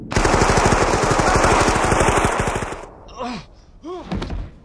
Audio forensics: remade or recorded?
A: recorded